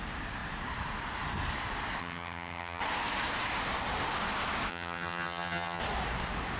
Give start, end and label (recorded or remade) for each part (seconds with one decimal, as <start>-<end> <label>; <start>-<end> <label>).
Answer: 0.0-2.0 recorded; 2.0-2.8 remade; 2.8-4.7 recorded; 4.7-5.8 remade; 5.8-6.6 recorded